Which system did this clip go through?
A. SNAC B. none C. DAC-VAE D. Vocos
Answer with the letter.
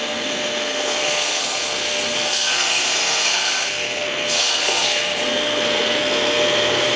A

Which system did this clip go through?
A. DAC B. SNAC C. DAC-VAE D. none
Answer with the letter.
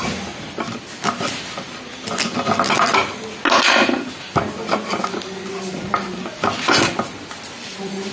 D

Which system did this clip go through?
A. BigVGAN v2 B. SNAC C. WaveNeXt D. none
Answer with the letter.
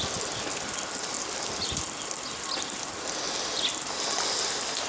D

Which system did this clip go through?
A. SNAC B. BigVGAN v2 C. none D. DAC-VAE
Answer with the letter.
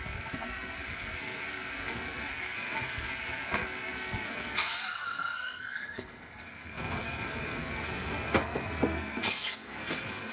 A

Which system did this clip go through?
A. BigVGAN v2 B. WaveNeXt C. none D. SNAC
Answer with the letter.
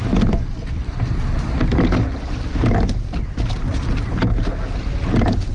C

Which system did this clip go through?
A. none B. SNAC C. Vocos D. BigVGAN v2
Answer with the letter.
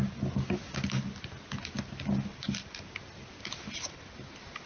A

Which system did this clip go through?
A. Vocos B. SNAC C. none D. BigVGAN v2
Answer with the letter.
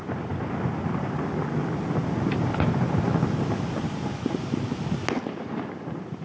C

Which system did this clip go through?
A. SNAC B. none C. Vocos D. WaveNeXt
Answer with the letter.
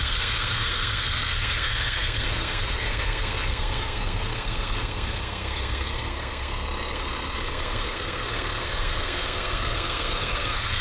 A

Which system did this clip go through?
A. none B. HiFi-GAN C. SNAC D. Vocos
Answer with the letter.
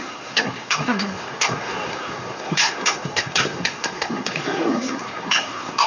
C